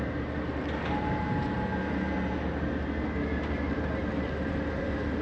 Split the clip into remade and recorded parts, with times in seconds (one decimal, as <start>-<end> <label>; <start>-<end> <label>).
0.0-5.2 recorded